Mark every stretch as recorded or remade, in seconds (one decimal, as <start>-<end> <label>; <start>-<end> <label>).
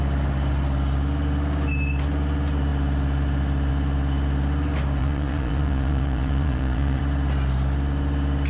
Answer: 0.0-5.0 recorded; 5.0-7.0 remade; 7.0-8.5 recorded